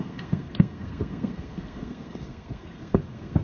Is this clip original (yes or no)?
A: no